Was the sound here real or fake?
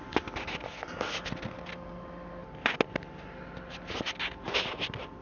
real